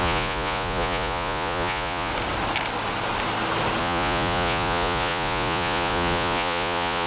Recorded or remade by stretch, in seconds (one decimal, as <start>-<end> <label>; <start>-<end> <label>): 0.0-2.1 remade; 2.1-3.8 recorded; 3.8-7.1 remade